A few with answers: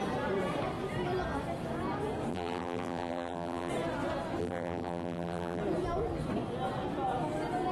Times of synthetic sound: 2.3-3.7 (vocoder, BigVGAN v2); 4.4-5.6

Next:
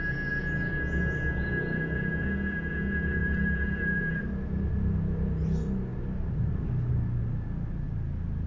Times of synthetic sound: 3.2-4.2 (vocoder, BigVGAN v2)

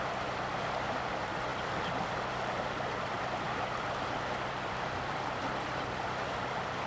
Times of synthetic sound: 0.0-6.9 (vocoder, BigVGAN v2)

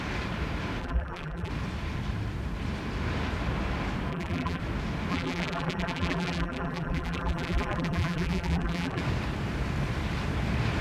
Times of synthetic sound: 0.8-1.5 (vocoder, BigVGAN v2); 4.1-4.6; 5.1-9.0

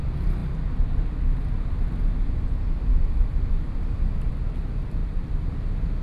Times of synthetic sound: 5.0-5.5 (vocoder, BigVGAN v2)

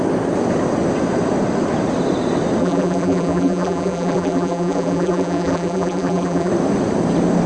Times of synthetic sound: 2.6-6.5 (vocoder, BigVGAN v2)

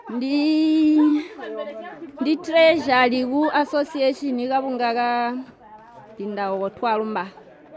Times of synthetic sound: none